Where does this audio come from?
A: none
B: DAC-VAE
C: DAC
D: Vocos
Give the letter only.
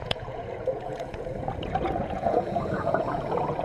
D